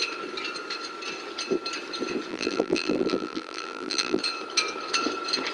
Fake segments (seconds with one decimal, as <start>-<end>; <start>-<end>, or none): 2.3-4.2